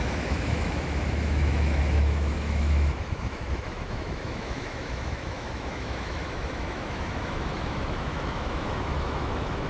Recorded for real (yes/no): no